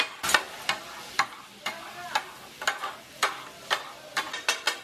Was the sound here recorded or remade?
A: recorded